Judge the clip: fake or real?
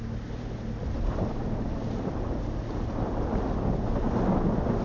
real